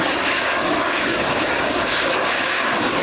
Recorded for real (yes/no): no